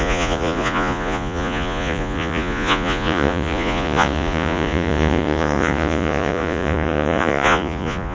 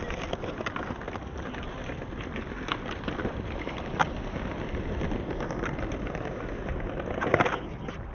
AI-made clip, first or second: first